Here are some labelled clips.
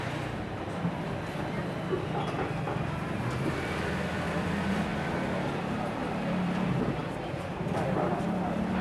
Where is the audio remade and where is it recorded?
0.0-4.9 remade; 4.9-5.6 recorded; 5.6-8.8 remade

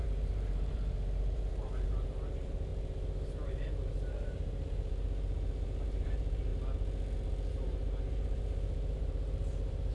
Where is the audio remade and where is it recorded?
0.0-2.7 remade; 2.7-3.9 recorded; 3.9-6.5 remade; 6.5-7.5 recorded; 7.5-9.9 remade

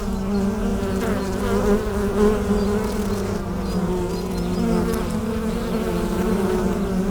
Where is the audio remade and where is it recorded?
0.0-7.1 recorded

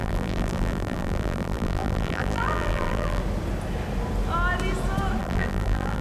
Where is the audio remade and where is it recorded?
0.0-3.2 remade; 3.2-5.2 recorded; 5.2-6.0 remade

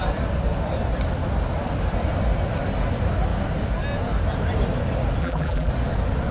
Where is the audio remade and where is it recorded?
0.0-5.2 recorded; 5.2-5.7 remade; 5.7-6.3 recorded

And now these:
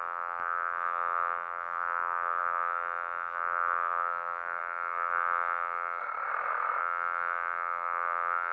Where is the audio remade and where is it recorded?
0.0-6.0 remade; 6.0-6.8 recorded; 6.8-8.5 remade

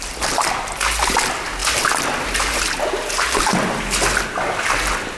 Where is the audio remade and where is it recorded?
0.0-5.2 recorded

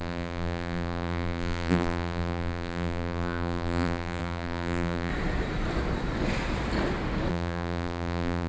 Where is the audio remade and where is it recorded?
0.0-5.1 remade; 5.1-7.3 recorded; 7.3-8.5 remade